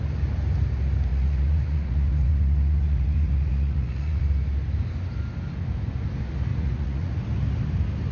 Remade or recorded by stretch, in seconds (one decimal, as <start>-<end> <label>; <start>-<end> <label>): 0.0-1.1 recorded; 1.1-4.2 remade; 4.2-6.5 recorded; 6.5-7.1 remade; 7.1-8.1 recorded

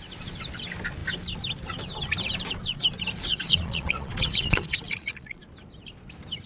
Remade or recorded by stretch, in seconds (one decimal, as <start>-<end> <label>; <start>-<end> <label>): 0.0-3.3 recorded; 3.3-5.4 remade; 5.4-6.5 recorded

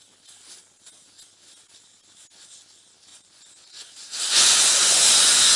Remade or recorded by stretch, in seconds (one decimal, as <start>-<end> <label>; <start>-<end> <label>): 0.0-3.1 recorded; 3.1-5.6 remade

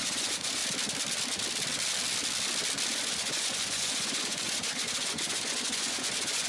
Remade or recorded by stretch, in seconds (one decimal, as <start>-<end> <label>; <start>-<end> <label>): 0.0-0.6 remade; 0.6-2.9 recorded; 2.9-6.5 remade

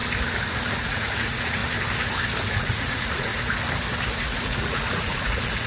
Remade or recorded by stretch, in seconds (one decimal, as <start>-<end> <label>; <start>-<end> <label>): 0.0-0.8 recorded; 0.8-1.6 remade; 1.6-2.5 recorded; 2.5-3.3 remade; 3.3-4.2 recorded; 4.2-5.7 remade

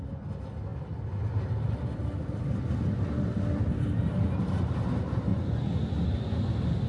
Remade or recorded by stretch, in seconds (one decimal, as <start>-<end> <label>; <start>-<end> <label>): 0.0-5.3 recorded; 5.3-5.8 remade; 5.8-6.9 recorded

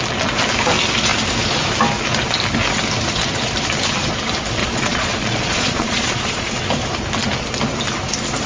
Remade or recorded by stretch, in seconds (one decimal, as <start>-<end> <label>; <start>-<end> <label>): 0.0-4.6 recorded; 4.6-6.5 remade; 6.5-8.5 recorded

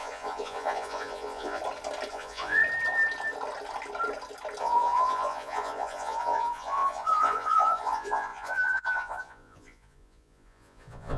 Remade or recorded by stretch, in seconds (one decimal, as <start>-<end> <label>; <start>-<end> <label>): 0.0-1.6 remade; 1.6-2.1 recorded; 2.1-2.6 remade; 2.6-4.6 recorded; 4.6-11.2 remade